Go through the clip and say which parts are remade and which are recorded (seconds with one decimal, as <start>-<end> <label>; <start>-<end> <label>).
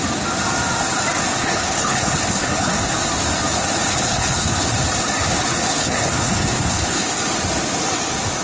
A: 0.0-1.4 recorded; 1.4-2.7 remade; 2.7-3.9 recorded; 3.9-4.7 remade; 4.7-5.7 recorded; 5.7-7.2 remade; 7.2-8.4 recorded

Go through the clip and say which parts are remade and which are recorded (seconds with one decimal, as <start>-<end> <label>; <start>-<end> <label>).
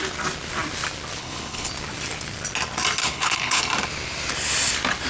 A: 0.0-1.2 recorded; 1.2-1.7 remade; 1.7-3.0 recorded; 3.0-3.6 remade; 3.6-5.1 recorded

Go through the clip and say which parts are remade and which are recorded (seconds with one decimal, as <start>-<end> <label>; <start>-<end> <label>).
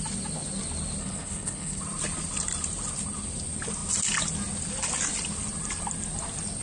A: 0.0-1.0 recorded; 1.0-1.8 remade; 1.8-6.6 recorded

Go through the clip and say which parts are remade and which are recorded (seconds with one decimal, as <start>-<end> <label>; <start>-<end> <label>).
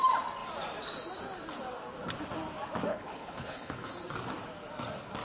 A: 0.0-2.9 recorded; 2.9-3.9 remade; 3.9-5.2 recorded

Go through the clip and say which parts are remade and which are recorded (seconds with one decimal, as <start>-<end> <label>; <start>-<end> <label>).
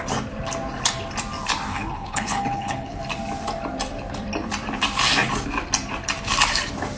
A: 0.0-1.7 recorded; 1.7-3.0 remade; 3.0-7.0 recorded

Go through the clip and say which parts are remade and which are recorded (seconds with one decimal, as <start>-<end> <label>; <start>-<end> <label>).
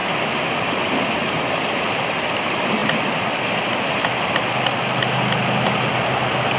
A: 0.0-6.6 recorded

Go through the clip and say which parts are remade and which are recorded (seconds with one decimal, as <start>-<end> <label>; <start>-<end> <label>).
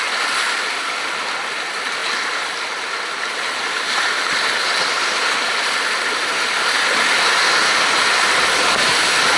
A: 0.0-9.4 recorded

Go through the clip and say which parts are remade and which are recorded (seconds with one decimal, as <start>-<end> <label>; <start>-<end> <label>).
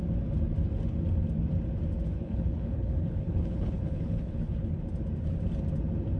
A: 0.0-2.1 recorded; 2.1-4.8 remade; 4.8-6.2 recorded